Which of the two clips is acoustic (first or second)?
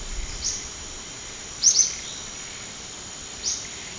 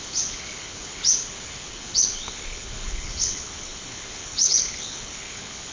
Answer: first